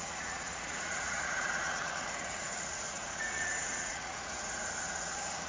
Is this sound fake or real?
fake